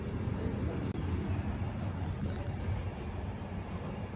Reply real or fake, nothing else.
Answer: real